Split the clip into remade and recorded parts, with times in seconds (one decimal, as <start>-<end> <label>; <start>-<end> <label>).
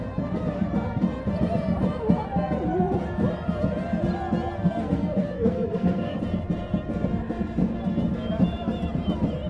0.0-4.6 recorded; 4.6-6.2 remade; 6.2-9.5 recorded